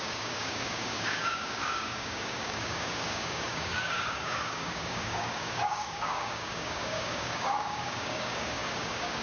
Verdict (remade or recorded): remade